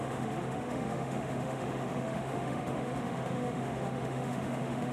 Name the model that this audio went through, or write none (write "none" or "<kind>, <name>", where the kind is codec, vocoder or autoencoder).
autoencoder, DAC-VAE